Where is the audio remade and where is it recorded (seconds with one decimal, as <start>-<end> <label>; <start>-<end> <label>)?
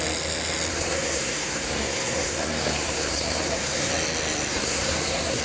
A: 0.0-0.7 recorded; 0.7-3.9 remade; 3.9-4.5 recorded; 4.5-5.4 remade